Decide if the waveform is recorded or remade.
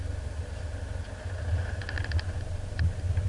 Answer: recorded